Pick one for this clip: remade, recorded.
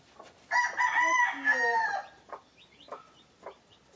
recorded